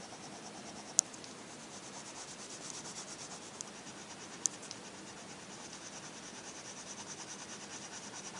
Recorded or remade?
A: recorded